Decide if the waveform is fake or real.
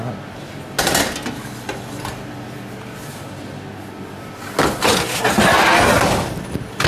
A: real